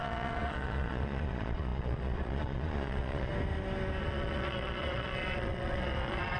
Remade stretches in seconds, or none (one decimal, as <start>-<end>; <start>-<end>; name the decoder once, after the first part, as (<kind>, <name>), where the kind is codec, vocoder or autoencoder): 0.0-3.3 (vocoder, Vocos); 4.0-6.4